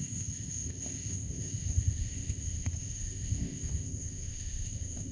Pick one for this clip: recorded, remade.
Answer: remade